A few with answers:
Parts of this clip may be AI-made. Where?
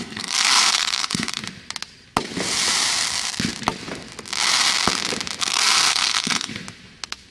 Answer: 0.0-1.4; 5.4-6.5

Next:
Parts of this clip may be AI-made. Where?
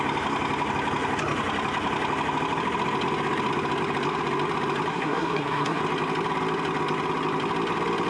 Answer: 4.9-5.8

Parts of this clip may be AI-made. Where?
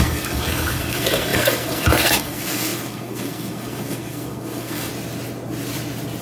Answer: 0.0-4.9